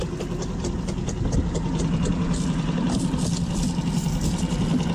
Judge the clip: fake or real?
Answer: real